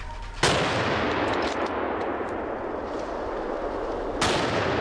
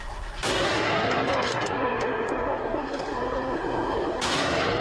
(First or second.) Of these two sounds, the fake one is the second